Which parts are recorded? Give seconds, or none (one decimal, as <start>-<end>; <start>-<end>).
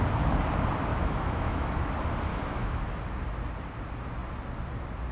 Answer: 0.0-0.9; 1.7-2.3; 2.8-5.1